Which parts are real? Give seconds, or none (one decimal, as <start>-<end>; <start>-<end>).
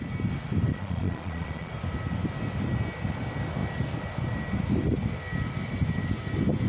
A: 0.0-0.7; 1.7-6.7